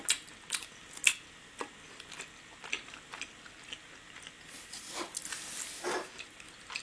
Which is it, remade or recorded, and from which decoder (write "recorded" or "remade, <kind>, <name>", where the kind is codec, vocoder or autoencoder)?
recorded